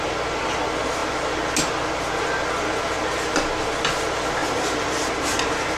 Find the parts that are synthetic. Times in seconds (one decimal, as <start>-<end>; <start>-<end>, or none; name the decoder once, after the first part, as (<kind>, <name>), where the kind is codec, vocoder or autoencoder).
none